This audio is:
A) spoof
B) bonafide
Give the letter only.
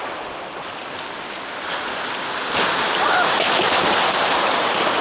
B